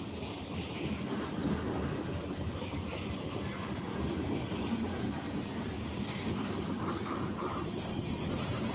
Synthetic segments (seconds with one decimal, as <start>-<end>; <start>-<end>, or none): none